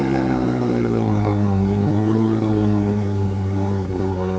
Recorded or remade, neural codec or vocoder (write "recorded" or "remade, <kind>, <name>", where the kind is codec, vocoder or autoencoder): remade, codec, SNAC